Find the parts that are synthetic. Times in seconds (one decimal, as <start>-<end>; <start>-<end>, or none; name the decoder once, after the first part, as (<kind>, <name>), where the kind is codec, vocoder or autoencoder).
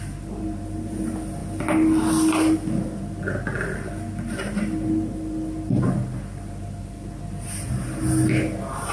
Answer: none